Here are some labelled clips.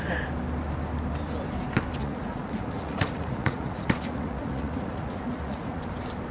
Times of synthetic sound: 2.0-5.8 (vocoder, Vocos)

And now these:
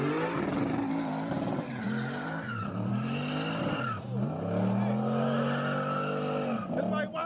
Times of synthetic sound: 0.5-2.9 (vocoder, BigVGAN v2)

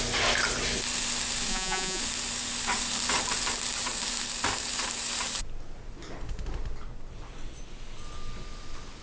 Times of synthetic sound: 1.5-2.0 (vocoder, Vocos)